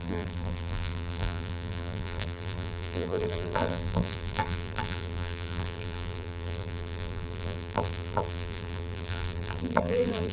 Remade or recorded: remade